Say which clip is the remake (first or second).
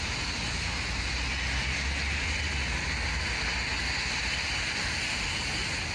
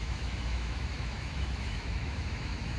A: second